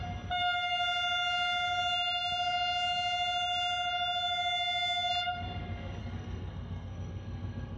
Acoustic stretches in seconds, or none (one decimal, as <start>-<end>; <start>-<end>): 0.0-6.0